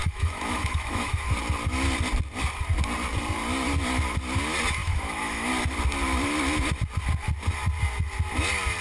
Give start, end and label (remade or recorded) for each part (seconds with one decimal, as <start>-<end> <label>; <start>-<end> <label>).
0.0-1.2 remade; 1.2-4.8 recorded; 4.8-5.5 remade; 5.5-8.8 recorded